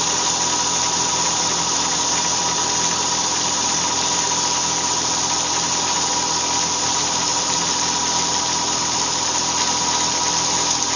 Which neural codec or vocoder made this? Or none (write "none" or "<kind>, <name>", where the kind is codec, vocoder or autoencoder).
none